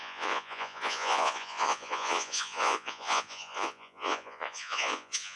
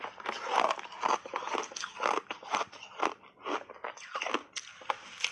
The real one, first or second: second